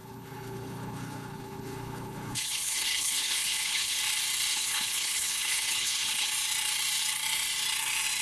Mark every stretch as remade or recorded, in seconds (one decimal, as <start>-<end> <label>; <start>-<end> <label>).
0.0-4.0 remade; 4.0-4.5 recorded; 4.5-6.3 remade; 6.3-8.2 recorded